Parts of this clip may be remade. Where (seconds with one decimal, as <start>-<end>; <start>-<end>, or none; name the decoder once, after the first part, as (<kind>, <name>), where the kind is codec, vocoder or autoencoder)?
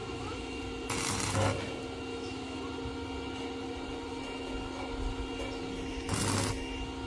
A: 0.0-0.6 (autoencoder, DAC-VAE); 2.1-2.6